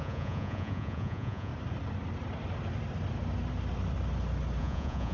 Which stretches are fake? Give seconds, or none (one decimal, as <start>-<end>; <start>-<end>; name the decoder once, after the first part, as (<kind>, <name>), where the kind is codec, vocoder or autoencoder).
0.0-1.5 (vocoder, Vocos); 4.6-5.1